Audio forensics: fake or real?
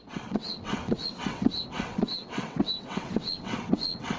fake